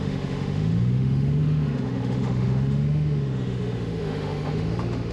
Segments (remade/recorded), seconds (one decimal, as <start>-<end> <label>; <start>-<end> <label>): 0.0-5.1 remade